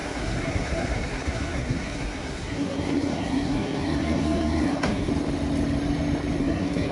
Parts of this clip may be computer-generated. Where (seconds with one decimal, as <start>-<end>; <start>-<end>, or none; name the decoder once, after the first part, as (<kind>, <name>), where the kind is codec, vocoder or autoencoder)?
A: 0.0-5.1 (codec, SNAC); 6.4-6.9